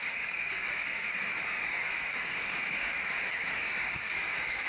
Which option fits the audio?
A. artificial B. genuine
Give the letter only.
A